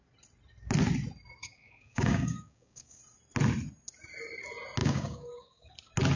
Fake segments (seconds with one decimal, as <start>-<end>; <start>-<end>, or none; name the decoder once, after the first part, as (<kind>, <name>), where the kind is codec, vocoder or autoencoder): 1.4-3.0 (codec, DAC); 4.8-5.7